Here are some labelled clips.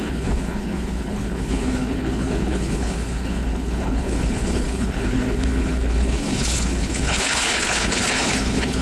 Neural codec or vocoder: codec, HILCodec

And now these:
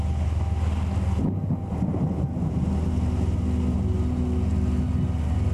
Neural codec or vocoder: none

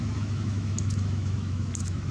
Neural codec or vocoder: autoencoder, DAC-VAE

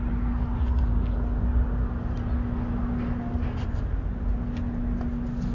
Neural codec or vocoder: none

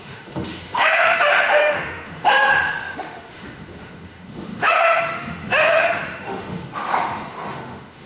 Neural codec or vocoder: autoencoder, DAC-VAE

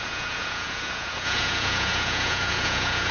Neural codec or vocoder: vocoder, Vocos